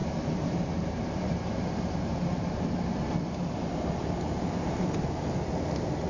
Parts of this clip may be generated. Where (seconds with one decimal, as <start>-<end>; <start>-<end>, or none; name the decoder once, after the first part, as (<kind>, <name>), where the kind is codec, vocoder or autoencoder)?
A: 0.0-3.1 (vocoder, BigVGAN v2); 4.0-5.0